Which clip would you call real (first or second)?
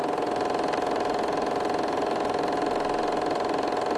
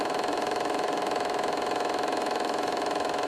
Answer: first